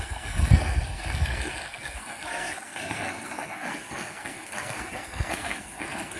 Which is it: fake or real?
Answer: fake